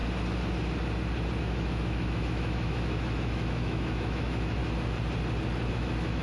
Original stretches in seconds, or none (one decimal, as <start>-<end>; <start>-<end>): 0.0-1.4; 4.6-5.7